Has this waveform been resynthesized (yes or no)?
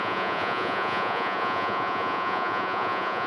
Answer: yes